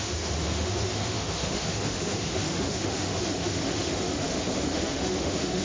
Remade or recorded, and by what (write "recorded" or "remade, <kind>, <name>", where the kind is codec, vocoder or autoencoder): remade, autoencoder, DAC-VAE